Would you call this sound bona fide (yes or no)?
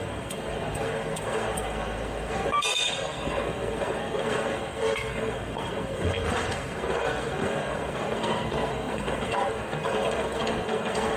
no